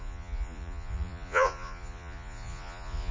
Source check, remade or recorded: remade